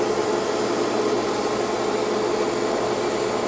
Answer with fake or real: real